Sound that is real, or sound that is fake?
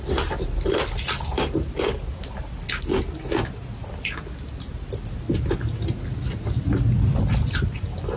real